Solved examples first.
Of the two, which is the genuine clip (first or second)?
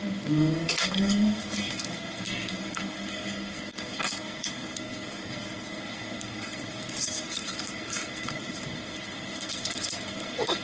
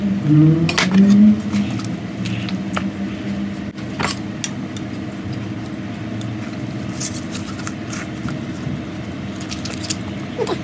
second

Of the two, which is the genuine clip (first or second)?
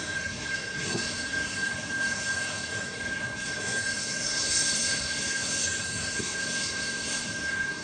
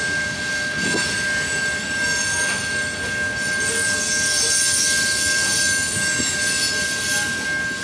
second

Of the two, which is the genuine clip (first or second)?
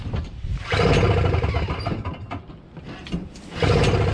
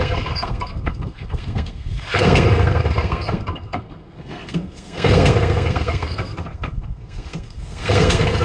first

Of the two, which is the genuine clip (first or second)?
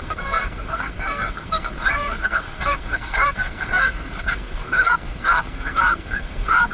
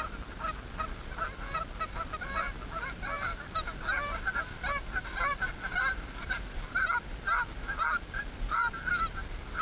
second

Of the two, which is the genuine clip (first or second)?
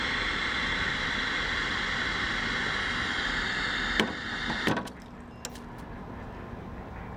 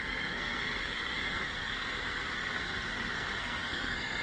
first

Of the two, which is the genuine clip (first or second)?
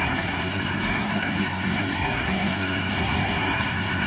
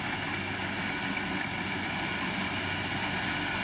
second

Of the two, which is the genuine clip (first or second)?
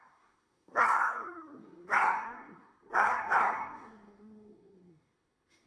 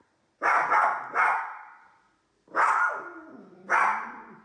second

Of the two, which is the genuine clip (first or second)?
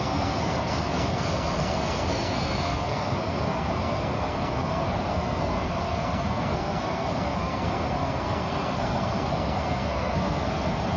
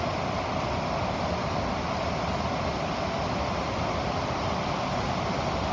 second